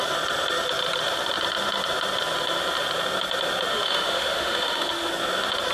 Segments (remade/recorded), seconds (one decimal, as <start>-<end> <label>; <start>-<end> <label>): 0.0-3.7 recorded; 3.7-5.1 remade; 5.1-5.7 recorded